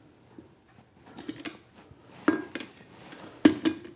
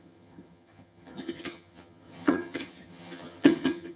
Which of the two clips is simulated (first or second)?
second